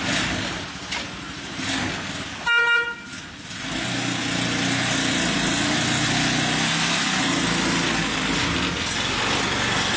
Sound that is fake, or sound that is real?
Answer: real